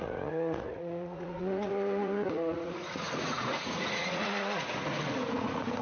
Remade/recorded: remade